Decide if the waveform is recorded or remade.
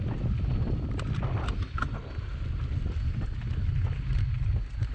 recorded